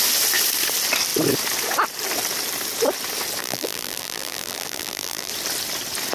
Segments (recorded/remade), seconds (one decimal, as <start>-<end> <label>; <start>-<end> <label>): 0.0-3.4 recorded; 3.4-5.3 remade; 5.3-6.1 recorded